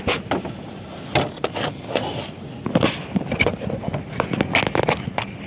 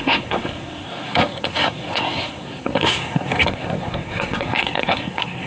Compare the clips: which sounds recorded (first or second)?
first